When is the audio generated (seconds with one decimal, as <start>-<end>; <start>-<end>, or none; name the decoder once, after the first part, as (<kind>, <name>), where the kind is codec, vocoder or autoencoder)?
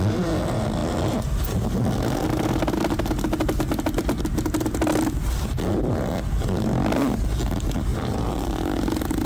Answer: none